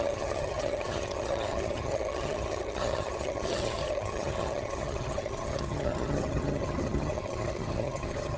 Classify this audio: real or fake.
fake